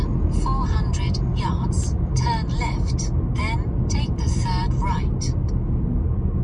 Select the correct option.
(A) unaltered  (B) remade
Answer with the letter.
A